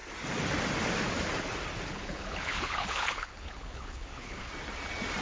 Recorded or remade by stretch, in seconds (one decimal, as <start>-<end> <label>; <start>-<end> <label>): 0.0-1.9 recorded; 1.9-4.5 remade; 4.5-5.2 recorded